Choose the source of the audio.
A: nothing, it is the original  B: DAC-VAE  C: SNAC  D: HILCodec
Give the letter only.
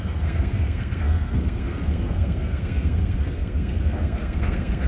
C